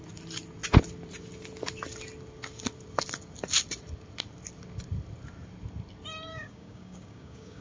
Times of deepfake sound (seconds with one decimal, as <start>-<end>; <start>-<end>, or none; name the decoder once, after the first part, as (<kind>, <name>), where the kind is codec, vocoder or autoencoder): 6.3-7.6 (codec, DAC)